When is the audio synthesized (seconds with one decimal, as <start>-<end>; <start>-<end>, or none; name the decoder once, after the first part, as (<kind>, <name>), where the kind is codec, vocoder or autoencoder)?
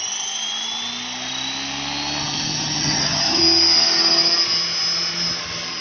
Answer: 2.2-3.4 (vocoder, HiFi-GAN)